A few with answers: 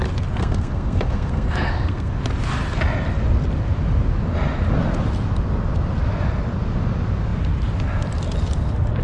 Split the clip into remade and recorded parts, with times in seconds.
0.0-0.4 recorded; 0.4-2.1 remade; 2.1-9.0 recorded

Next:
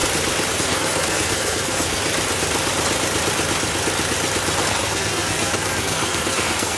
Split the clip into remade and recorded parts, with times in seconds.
0.0-0.5 recorded; 0.5-2.0 remade; 2.0-4.7 recorded; 4.7-6.8 remade